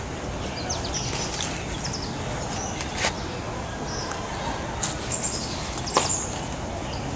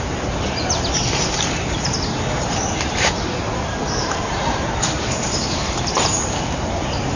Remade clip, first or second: second